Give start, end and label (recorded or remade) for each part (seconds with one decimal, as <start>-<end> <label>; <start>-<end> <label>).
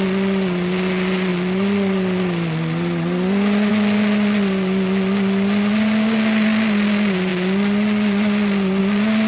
0.0-9.3 recorded